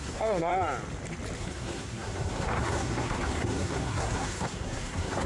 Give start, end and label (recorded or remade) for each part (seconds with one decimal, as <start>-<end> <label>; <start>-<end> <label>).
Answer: 0.0-0.5 remade; 0.5-1.4 recorded; 1.4-5.3 remade

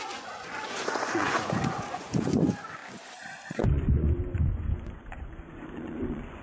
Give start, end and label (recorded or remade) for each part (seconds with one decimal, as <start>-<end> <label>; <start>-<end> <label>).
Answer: 0.0-6.4 remade